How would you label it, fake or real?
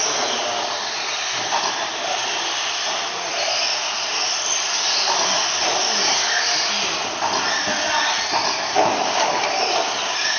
real